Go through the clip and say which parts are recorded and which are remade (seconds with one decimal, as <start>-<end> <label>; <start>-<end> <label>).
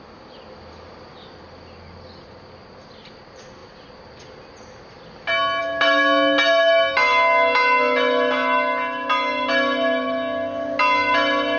0.0-11.6 recorded